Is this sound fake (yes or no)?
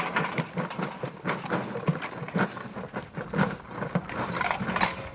no